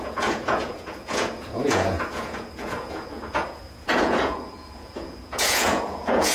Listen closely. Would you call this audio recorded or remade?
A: remade